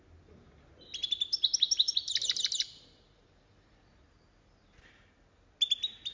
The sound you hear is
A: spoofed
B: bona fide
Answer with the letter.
B